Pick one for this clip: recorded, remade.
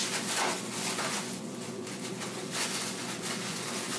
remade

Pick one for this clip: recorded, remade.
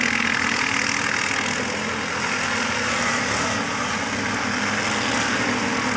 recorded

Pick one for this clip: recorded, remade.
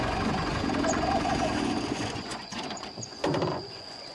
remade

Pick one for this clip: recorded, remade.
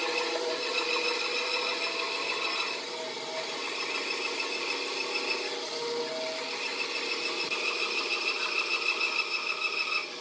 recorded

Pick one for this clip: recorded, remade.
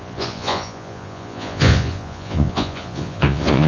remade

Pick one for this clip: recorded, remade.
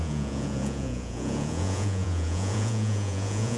remade